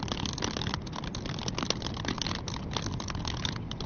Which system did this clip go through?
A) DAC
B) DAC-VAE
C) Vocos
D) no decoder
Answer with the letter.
D